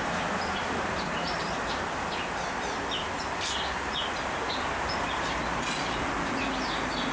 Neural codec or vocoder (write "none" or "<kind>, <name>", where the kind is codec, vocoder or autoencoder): none